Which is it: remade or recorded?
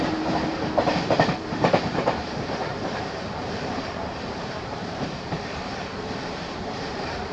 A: remade